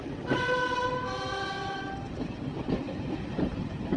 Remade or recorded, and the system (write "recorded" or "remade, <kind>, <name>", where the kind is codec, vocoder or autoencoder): recorded